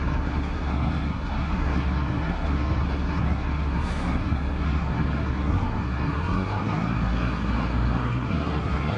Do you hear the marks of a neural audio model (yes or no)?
yes